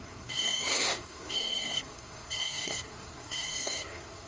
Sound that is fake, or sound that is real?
fake